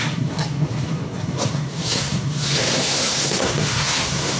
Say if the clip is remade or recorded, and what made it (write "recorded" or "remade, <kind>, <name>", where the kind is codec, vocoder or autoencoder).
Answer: remade, codec, SNAC